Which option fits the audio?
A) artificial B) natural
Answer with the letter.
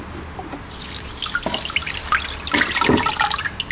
B